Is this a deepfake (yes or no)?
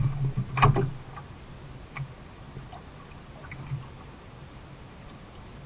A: no